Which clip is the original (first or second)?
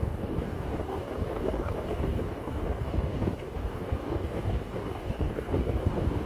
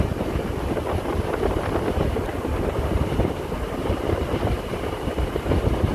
second